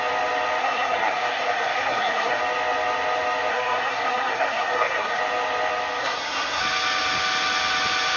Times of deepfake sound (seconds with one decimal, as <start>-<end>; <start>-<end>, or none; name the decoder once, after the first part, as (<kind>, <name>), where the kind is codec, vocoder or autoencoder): 0.6-2.4 (codec, SNAC); 3.5-5.2; 6.0-6.6